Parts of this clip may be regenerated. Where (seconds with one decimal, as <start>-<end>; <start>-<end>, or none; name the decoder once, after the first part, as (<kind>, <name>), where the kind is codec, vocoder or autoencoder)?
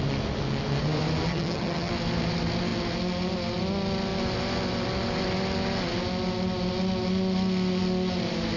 1.3-1.9 (vocoder, HiFi-GAN)